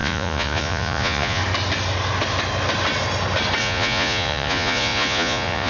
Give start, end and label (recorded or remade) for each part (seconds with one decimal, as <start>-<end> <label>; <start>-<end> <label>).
0.0-1.4 remade; 1.4-3.6 recorded; 3.6-5.7 remade